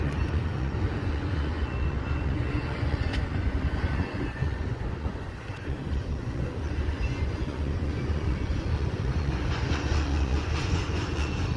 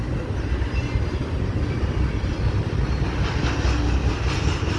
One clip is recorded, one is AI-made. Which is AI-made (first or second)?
first